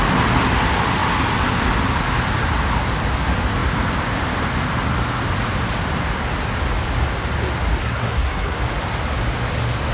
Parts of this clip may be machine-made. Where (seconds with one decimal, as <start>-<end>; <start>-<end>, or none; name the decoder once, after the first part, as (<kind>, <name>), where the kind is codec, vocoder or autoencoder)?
7.8-8.6 (codec, SNAC)